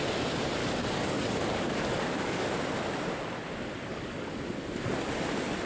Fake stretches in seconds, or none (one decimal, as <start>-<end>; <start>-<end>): 0.6-2.5; 3.9-4.5